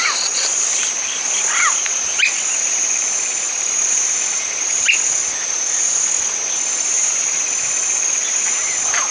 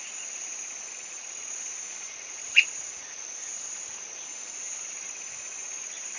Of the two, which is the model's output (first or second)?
second